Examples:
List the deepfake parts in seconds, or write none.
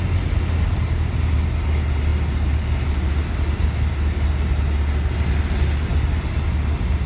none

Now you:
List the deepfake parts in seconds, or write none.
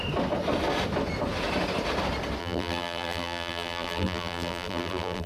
2.4-5.3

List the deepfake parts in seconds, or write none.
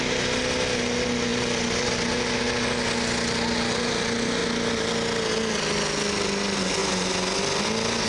none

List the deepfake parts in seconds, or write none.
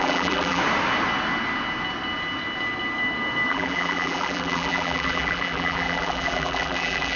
0.0-0.6; 3.5-7.2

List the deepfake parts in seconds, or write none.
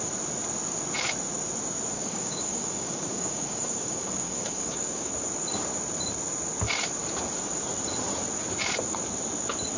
1.9-5.1